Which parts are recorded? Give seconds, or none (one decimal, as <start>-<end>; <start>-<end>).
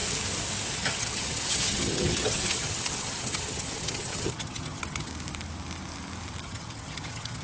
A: 0.0-0.8; 5.1-6.4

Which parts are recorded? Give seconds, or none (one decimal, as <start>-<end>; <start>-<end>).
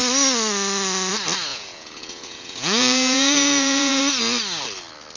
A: 0.0-1.5; 4.0-5.2